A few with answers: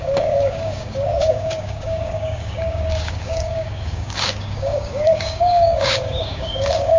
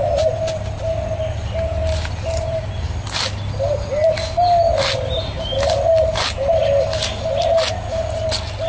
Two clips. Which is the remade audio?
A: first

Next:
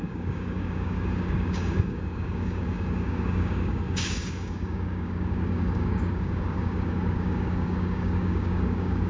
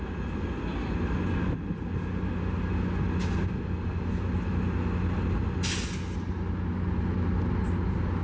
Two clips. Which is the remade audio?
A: first